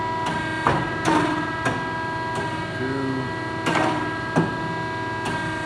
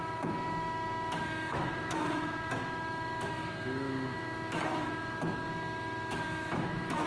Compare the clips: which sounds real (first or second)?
first